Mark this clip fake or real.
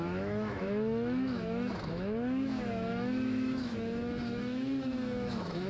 fake